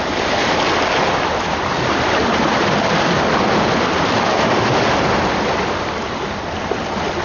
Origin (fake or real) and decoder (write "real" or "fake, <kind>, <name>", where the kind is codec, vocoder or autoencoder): real